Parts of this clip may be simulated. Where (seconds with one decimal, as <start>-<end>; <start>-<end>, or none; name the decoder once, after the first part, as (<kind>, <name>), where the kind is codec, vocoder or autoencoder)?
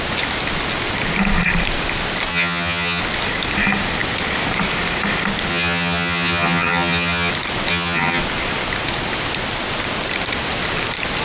2.3-3.0 (vocoder, HiFi-GAN); 5.5-7.3; 7.7-8.2